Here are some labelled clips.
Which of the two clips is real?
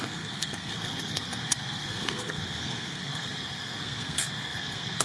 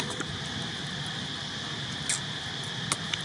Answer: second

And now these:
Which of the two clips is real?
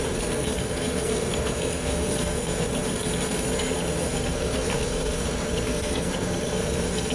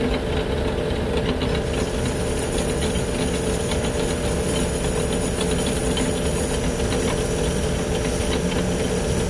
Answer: second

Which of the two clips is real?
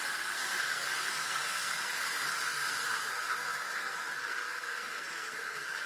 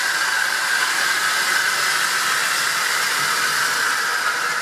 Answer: second